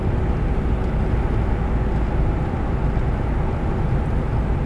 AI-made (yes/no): no